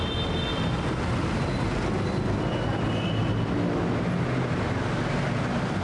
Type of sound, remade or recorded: recorded